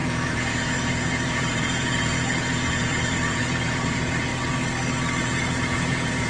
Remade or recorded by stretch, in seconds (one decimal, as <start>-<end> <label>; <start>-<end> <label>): 0.0-4.3 remade; 4.3-5.2 recorded; 5.2-6.3 remade